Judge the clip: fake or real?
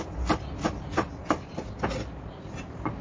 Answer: real